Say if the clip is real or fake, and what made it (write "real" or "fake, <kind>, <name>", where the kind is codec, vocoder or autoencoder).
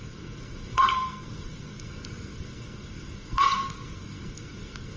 fake, codec, SNAC